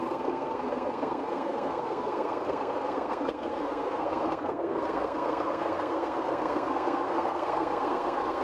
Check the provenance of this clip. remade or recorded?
remade